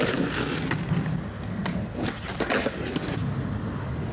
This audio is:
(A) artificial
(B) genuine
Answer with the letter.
B